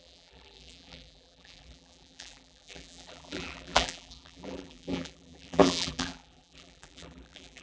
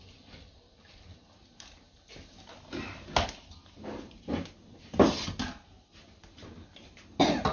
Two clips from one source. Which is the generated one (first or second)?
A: first